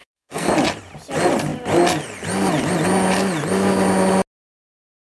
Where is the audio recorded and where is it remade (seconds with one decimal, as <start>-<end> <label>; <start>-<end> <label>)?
0.0-0.5 remade; 0.5-5.2 recorded